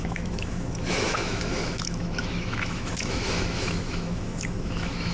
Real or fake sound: fake